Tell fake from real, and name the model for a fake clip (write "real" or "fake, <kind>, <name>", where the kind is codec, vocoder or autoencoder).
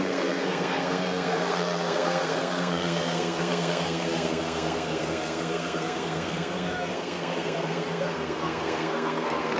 fake, codec, SNAC